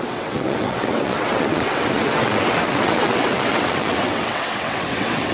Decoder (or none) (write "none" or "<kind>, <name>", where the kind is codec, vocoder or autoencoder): vocoder, WaveNeXt